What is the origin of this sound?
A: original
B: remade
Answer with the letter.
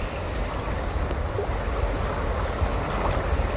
A